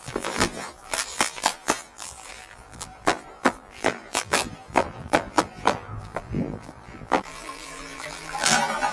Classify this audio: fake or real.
fake